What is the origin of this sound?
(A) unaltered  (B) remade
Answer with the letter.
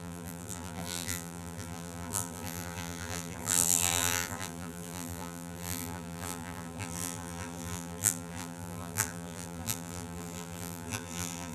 B